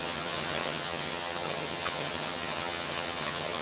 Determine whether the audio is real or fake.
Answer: fake